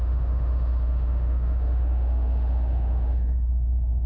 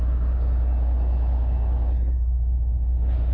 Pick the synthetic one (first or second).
first